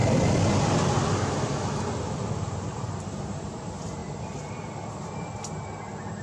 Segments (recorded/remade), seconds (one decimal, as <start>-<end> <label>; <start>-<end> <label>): 0.0-6.2 recorded